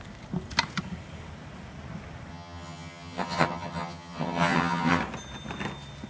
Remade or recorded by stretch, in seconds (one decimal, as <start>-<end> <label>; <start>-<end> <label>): 0.0-2.3 recorded; 2.3-5.0 remade; 5.0-6.1 recorded